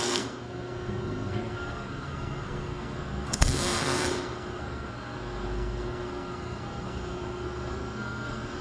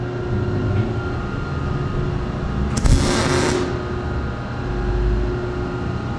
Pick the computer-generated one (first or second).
first